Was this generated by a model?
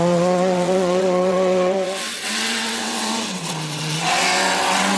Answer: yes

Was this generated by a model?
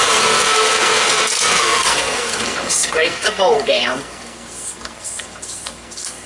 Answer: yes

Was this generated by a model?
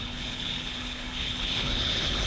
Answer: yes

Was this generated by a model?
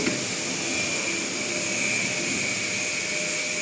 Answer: no